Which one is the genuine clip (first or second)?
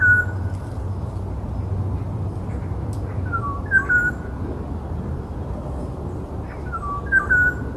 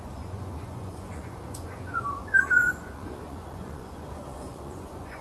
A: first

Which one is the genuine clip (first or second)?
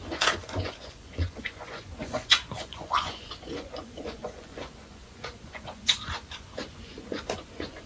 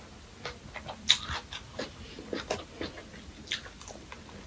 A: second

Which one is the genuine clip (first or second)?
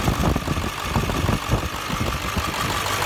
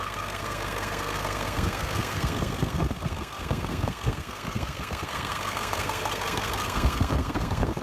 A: first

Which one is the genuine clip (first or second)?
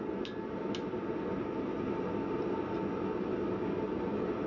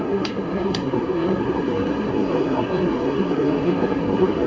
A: first